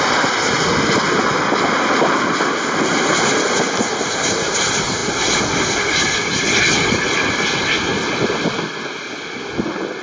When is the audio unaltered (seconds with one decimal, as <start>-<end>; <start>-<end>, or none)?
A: 0.0-10.0